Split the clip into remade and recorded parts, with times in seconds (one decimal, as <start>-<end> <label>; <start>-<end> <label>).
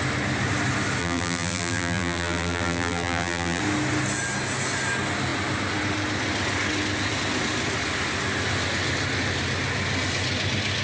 0.0-1.0 recorded; 1.0-3.6 remade; 3.6-10.8 recorded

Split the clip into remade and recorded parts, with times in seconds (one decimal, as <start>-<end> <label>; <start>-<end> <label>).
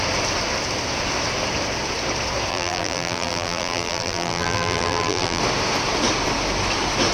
0.0-2.5 recorded; 2.5-5.4 remade; 5.4-7.1 recorded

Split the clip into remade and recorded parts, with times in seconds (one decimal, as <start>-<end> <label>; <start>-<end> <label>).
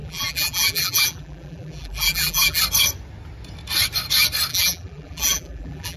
0.0-2.6 remade; 2.6-4.5 recorded; 4.5-6.0 remade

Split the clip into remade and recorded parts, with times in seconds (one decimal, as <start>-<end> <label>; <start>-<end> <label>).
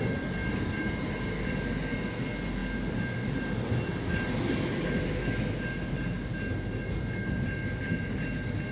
0.0-0.4 recorded; 0.4-1.1 remade; 1.1-8.7 recorded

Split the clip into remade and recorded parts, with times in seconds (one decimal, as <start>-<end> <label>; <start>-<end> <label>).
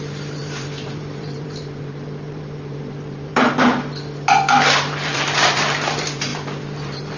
0.0-3.3 remade; 3.3-4.6 recorded; 4.6-7.2 remade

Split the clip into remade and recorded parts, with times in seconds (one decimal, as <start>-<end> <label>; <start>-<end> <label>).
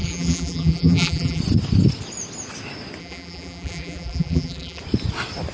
0.0-1.4 remade; 1.4-3.0 recorded; 3.0-4.8 remade; 4.8-5.5 recorded